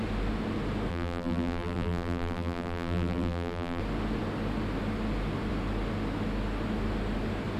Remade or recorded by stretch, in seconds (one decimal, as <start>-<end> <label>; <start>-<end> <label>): 0.0-0.9 recorded; 0.9-3.8 remade; 3.8-7.6 recorded